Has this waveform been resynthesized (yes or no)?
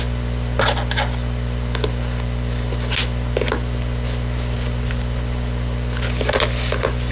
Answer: no